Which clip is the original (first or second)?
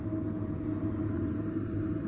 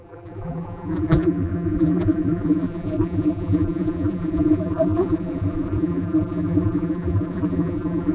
first